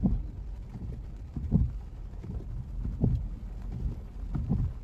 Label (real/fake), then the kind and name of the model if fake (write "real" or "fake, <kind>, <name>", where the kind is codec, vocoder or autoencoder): real